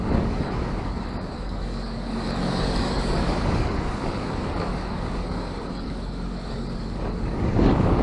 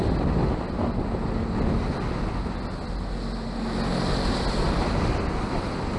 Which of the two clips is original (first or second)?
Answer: second